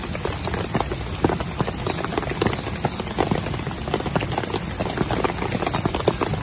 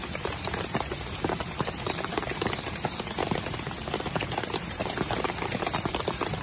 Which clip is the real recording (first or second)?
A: first